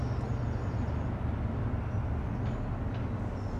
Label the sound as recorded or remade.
recorded